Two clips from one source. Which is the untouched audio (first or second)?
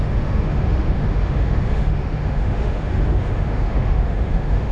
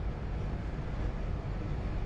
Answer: second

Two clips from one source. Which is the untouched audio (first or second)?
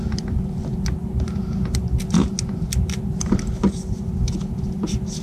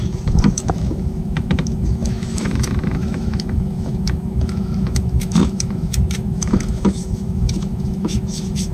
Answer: first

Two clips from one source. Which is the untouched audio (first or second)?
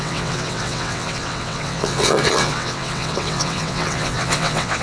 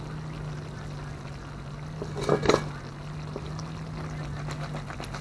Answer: second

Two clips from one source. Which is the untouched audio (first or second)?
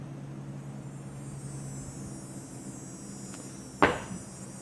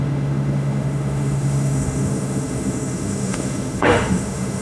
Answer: first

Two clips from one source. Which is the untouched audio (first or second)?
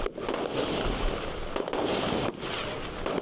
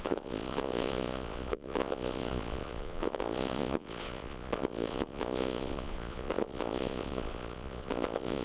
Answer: first